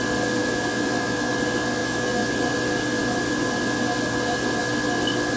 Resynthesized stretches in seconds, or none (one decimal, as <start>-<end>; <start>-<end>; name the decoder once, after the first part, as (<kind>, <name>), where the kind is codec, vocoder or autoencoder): 0.4-1.3 (autoencoder, DAC-VAE); 1.8-2.3